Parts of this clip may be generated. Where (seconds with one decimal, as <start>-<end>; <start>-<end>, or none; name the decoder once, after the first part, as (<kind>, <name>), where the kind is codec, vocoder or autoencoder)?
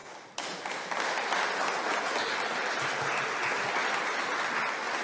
none